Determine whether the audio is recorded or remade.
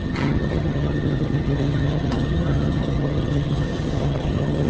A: remade